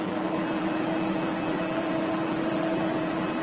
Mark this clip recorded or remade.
remade